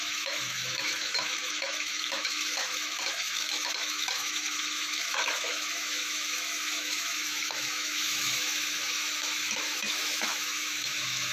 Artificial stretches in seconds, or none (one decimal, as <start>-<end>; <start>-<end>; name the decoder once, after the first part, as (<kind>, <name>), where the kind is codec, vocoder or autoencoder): 0.0-11.3 (autoencoder, DAC-VAE)